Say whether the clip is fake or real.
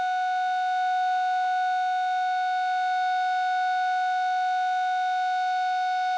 real